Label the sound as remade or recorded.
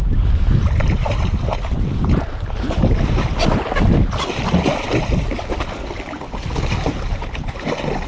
recorded